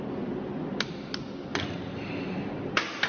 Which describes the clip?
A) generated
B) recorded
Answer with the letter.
B